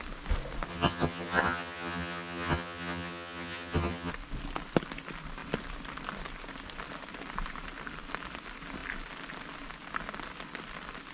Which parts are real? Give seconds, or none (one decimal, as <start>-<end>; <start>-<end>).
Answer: 0.0-0.7; 4.1-11.1